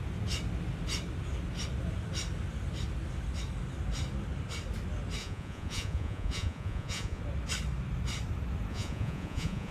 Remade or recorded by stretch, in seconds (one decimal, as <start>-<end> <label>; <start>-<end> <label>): 0.0-5.2 recorded; 5.2-7.2 remade; 7.2-8.7 recorded; 8.7-9.7 remade